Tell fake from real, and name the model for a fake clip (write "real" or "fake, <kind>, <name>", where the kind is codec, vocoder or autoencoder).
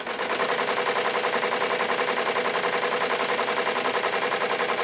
real